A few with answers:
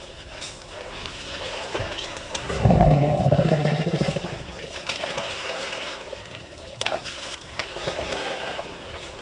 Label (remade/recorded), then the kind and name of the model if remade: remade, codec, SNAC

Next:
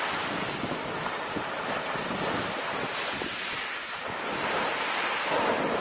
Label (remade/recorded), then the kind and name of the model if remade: recorded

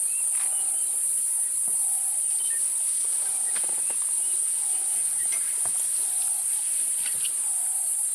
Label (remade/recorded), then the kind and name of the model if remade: recorded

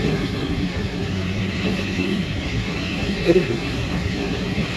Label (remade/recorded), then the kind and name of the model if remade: remade, codec, SNAC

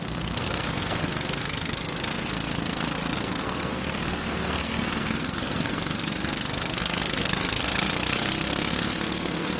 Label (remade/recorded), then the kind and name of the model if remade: remade, codec, SNAC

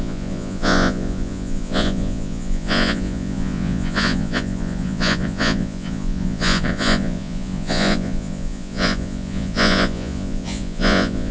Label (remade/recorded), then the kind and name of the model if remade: remade, vocoder, Vocos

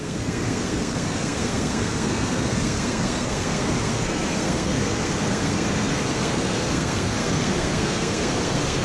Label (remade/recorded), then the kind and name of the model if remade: remade, codec, SNAC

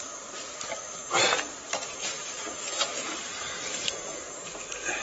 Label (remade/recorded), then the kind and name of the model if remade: recorded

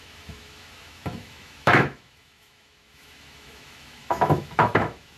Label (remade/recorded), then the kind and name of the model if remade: remade, autoencoder, DAC-VAE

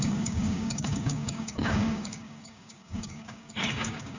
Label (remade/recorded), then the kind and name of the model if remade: remade, codec, DAC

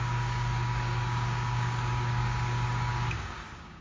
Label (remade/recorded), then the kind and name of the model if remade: remade, codec, DAC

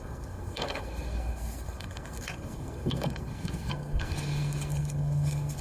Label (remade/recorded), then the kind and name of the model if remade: remade, codec, SNAC